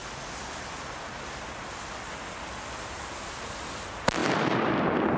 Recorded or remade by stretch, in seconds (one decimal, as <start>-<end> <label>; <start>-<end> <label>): 0.0-5.2 recorded